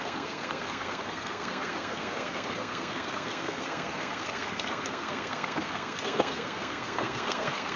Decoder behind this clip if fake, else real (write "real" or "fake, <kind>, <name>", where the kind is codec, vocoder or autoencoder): fake, codec, SNAC